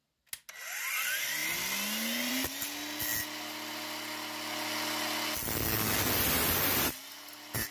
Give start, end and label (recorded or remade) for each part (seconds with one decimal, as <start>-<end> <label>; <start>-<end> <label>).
0.0-7.7 recorded